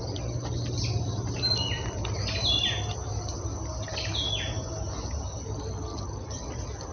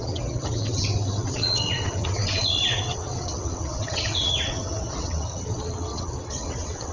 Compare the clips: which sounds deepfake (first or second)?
second